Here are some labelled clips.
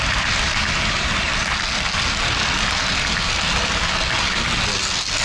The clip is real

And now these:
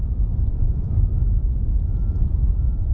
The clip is fake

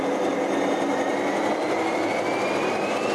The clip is real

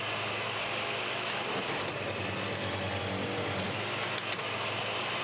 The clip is real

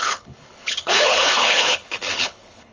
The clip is fake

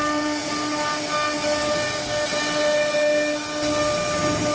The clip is real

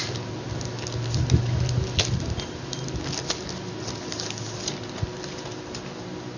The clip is real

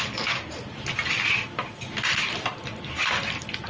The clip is real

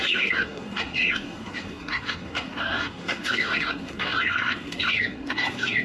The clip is fake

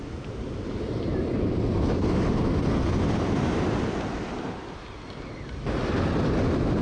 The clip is real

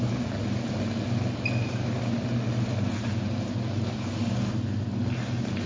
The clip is real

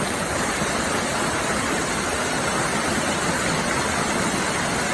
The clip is real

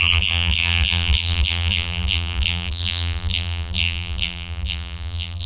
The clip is fake